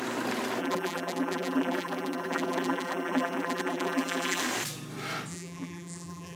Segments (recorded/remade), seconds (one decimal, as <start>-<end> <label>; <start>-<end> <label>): 0.0-0.6 recorded; 0.6-4.4 remade; 4.4-5.3 recorded; 5.3-6.4 remade